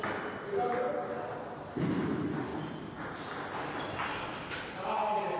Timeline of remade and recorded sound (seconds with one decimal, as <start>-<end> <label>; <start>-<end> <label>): 0.0-5.4 recorded